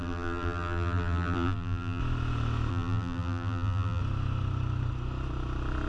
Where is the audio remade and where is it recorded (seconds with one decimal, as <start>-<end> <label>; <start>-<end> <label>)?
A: 0.0-2.0 remade; 2.0-2.7 recorded; 2.7-4.0 remade; 4.0-5.9 recorded